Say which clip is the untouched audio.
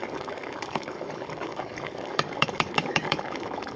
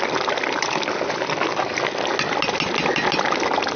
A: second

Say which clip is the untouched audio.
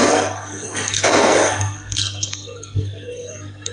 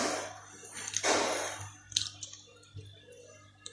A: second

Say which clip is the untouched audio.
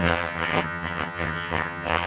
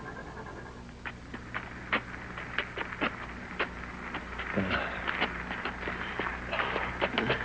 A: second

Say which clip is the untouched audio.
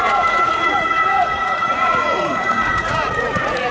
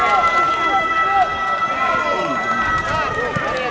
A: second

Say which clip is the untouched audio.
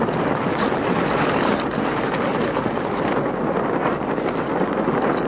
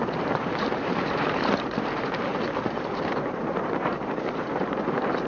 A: first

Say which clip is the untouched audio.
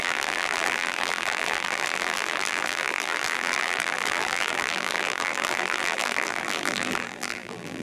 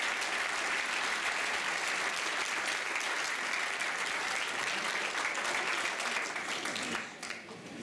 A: second